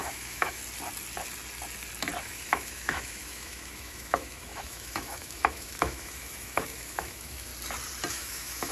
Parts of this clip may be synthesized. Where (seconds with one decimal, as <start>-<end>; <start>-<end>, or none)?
0.0-0.6; 2.2-7.5; 8.1-8.7